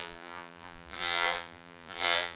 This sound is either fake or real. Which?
fake